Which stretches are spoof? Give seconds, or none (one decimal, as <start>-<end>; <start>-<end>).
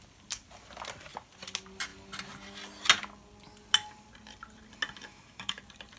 5.1-5.6